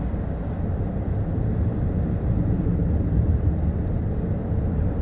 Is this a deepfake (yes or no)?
no